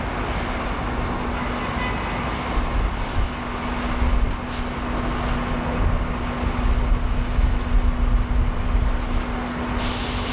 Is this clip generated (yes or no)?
no